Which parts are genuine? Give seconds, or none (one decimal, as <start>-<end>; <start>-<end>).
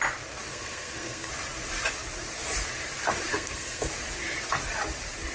0.0-0.5; 1.3-3.3; 3.9-5.3